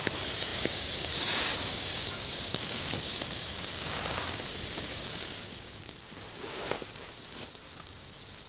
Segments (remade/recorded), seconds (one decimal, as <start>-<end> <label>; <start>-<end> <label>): 0.0-8.5 remade